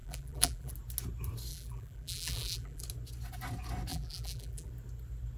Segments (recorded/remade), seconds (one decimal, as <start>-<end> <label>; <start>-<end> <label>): 0.0-0.7 remade; 0.7-1.5 recorded; 1.5-2.8 remade; 2.8-3.9 recorded; 3.9-4.7 remade; 4.7-5.4 recorded